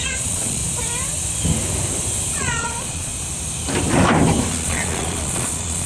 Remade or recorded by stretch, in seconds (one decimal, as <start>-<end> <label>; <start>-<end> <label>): 0.0-0.6 remade; 0.6-2.3 recorded; 2.3-3.1 remade; 3.1-4.5 recorded; 4.5-5.9 remade